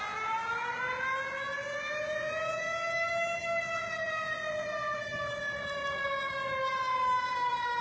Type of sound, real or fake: real